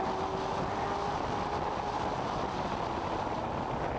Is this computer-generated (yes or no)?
no